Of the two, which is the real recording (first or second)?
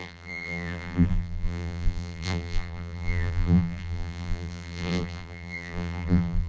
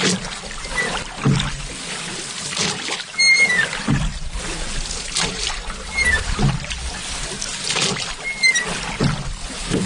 second